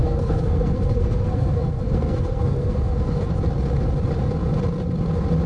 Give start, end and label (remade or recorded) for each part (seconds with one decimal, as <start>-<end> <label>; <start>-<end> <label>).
0.0-3.3 remade; 3.3-5.5 recorded